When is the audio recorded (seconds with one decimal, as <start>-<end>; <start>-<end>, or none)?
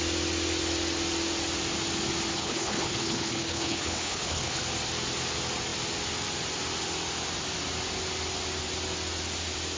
0.0-2.3; 4.6-9.8